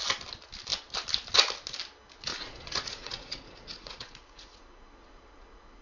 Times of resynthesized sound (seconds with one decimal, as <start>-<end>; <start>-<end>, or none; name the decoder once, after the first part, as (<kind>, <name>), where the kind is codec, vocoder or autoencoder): 2.3-5.8 (vocoder, Vocos)